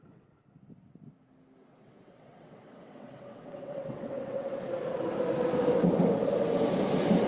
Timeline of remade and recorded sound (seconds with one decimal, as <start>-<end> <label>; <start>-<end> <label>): 0.0-1.6 recorded; 1.6-4.7 remade; 4.7-7.3 recorded